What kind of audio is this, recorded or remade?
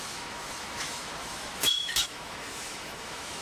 remade